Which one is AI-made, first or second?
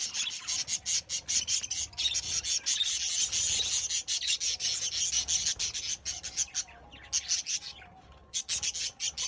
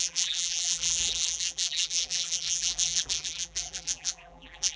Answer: second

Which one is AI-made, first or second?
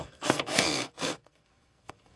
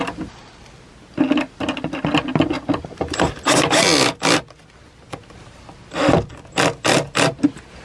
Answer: first